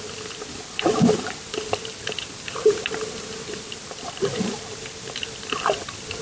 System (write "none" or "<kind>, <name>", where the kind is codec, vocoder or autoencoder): none